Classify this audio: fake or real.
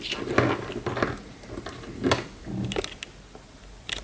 real